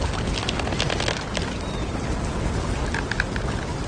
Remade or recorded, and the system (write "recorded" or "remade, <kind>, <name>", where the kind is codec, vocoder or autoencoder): recorded